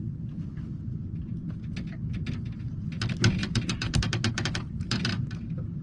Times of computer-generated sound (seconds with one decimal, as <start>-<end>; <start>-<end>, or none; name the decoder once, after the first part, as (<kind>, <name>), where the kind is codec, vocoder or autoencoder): 3.4-5.8 (vocoder, BigVGAN v2)